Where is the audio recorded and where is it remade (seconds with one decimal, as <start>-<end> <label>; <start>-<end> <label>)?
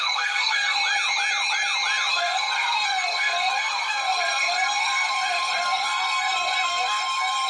0.0-0.8 remade; 0.8-2.1 recorded; 2.1-7.5 remade